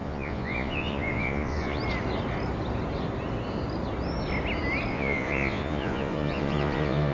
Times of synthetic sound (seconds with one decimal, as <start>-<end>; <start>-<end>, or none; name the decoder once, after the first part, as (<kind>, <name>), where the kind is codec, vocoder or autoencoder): 0.0-1.8 (vocoder, Vocos); 4.9-7.1